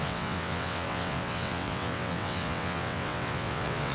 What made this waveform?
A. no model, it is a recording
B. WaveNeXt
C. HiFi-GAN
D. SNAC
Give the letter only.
B